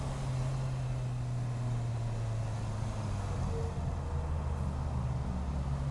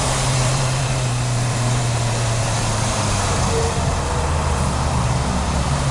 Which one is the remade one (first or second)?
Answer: second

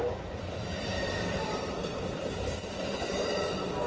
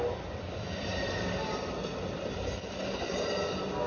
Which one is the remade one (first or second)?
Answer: first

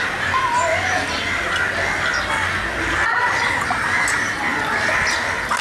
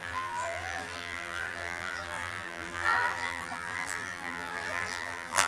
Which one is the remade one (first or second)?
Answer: second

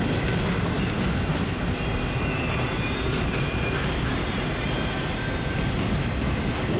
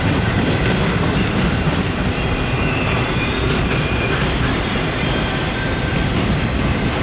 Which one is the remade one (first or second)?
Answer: second